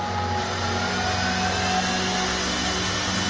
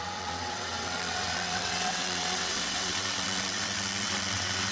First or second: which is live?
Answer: first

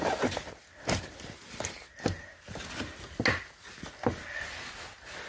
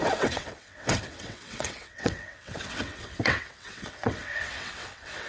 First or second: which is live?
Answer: first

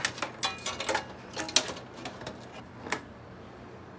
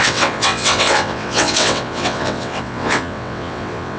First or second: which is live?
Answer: first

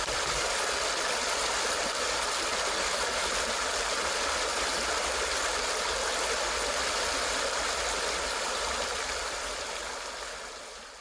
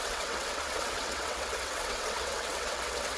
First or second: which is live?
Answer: first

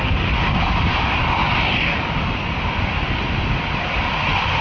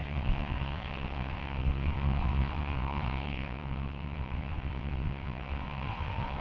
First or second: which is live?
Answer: first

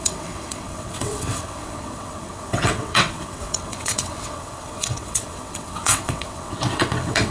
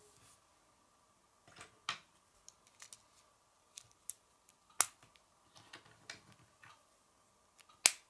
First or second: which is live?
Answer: second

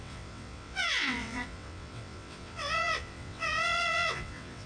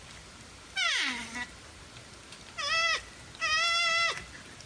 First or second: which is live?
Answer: second